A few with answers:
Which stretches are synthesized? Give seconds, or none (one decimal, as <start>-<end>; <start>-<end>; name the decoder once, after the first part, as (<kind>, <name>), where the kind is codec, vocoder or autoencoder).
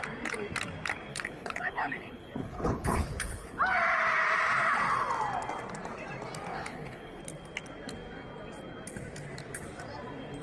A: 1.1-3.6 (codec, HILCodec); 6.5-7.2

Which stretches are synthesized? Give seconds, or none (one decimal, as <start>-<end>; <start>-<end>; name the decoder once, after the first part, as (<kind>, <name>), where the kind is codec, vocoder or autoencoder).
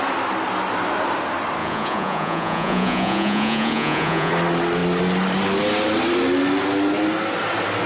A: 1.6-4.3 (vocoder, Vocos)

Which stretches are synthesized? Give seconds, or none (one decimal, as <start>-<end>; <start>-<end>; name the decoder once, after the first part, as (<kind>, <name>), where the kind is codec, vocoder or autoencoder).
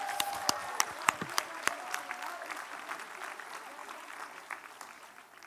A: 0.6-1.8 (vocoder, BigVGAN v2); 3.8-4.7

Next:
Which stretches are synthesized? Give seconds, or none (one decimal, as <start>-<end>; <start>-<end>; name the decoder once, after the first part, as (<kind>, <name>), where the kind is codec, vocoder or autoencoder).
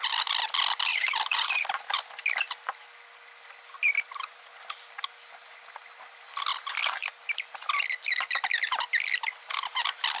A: 0.9-1.6 (vocoder, BigVGAN v2)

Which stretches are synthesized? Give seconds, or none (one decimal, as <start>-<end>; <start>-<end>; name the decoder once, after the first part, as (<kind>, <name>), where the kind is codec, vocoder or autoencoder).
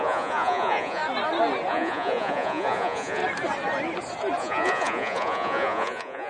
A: 0.0-1.0 (vocoder, Vocos); 1.7-3.2; 4.4-6.3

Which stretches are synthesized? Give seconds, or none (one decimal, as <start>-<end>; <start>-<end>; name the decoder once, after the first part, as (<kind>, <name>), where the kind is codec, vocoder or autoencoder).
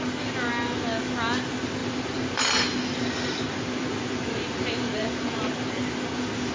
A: 1.8-5.7 (vocoder, BigVGAN v2)